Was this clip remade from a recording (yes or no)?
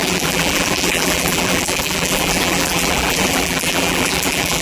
yes